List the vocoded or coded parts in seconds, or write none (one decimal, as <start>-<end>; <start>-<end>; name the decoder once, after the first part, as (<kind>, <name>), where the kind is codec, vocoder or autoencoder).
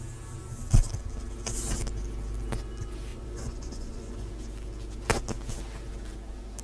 3.1-4.3 (vocoder, Vocos)